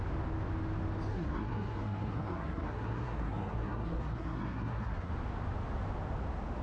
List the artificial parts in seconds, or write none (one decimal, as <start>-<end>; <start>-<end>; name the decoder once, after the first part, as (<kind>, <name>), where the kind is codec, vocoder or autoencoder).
1.1-5.1 (codec, SNAC)